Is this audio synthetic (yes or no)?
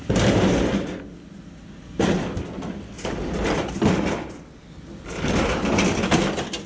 no